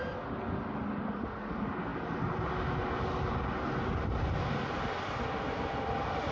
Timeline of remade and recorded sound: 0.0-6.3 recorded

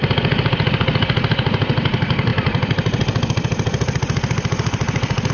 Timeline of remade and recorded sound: 0.0-5.3 recorded

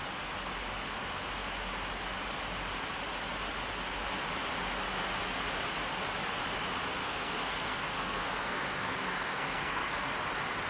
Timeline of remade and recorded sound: 0.0-7.0 recorded; 7.0-10.1 remade; 10.1-10.7 recorded

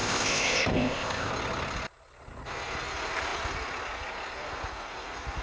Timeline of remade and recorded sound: 0.0-1.3 remade; 1.3-5.4 recorded

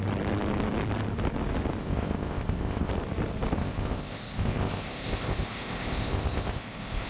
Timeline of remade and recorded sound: 0.0-1.8 recorded; 1.8-2.9 remade; 2.9-3.6 recorded; 3.6-7.1 remade

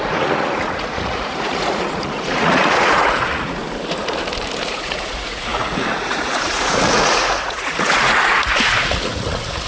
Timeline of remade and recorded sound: 0.0-3.6 remade; 3.6-4.7 recorded; 4.7-9.7 remade